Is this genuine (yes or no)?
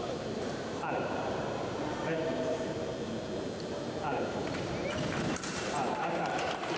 no